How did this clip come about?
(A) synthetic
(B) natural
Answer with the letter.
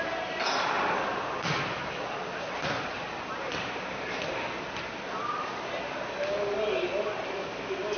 B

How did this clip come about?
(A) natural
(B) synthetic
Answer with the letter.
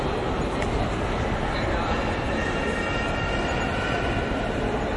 A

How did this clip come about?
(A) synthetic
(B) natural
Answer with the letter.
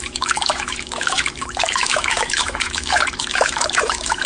A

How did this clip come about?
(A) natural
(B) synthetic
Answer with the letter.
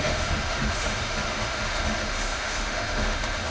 B